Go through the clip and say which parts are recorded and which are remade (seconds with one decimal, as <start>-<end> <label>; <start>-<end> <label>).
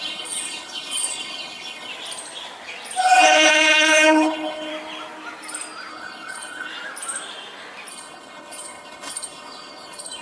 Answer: 0.0-1.9 remade; 1.9-3.0 recorded; 3.0-4.7 remade; 4.7-5.9 recorded; 5.9-6.7 remade; 6.7-7.9 recorded; 7.9-10.2 remade